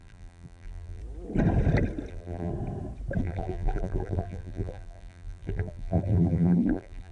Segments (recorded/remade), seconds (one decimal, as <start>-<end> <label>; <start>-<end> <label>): 0.0-1.0 remade; 1.0-2.1 recorded; 2.1-2.5 remade; 2.5-3.2 recorded; 3.2-7.1 remade